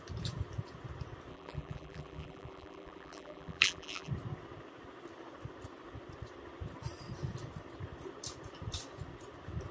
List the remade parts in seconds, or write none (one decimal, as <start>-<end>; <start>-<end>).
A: 1.3-4.1